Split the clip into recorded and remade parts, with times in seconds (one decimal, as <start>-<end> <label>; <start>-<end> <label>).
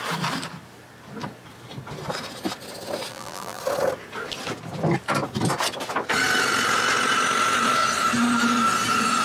0.0-3.1 recorded; 3.1-3.6 remade; 3.6-9.2 recorded